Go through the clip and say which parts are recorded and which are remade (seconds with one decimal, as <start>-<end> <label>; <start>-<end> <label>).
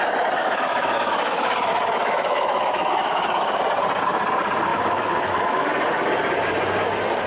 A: 0.0-0.4 recorded; 0.4-3.6 remade; 3.6-4.7 recorded; 4.7-5.7 remade; 5.7-7.3 recorded